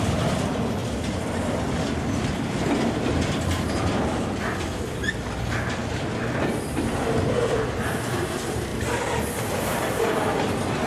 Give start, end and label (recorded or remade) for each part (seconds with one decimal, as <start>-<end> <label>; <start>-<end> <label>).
0.0-0.8 recorded; 0.8-3.7 remade; 3.7-5.8 recorded; 5.8-6.8 remade; 6.8-10.9 recorded